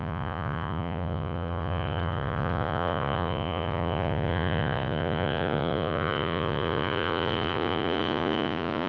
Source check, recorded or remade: remade